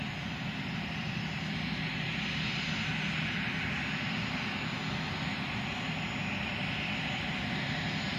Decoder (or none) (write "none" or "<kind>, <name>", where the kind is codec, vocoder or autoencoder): none